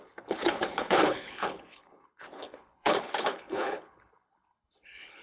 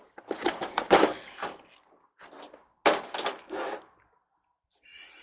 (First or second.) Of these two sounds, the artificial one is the first